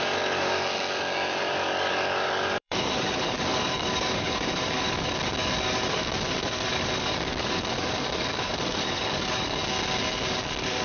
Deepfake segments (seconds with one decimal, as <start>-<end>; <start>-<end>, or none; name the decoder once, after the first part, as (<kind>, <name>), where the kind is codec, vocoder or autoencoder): 0.0-9.6 (codec, DAC); 10.4-10.8